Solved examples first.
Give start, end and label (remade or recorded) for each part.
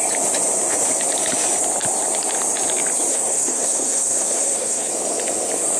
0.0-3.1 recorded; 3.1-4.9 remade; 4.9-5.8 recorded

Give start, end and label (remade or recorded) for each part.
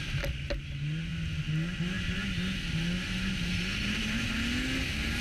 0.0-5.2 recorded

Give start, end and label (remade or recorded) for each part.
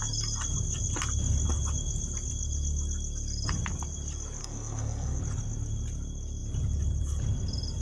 0.0-4.4 recorded; 4.4-5.2 remade; 5.2-7.8 recorded